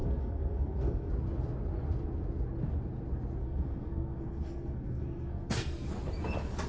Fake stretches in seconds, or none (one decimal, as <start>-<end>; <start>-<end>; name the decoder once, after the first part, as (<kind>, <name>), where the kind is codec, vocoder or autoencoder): 0.0-1.1 (codec, SNAC); 3.4-5.9